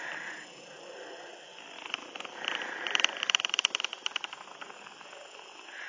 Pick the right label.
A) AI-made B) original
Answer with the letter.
B